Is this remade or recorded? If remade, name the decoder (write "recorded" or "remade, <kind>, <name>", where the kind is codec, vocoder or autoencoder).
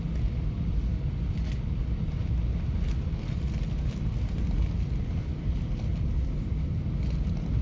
recorded